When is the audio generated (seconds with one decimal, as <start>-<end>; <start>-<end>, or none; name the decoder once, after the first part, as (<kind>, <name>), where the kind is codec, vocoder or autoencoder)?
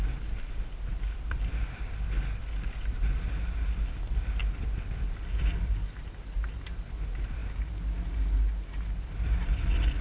none